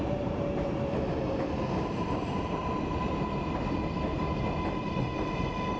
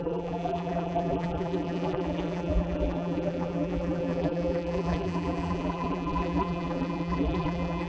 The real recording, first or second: first